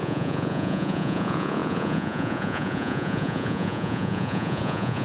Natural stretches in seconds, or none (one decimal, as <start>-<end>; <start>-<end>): none